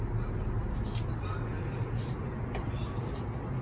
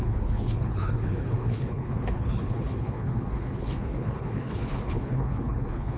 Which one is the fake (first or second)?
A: second